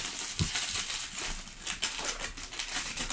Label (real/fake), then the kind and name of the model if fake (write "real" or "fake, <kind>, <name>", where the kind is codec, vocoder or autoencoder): real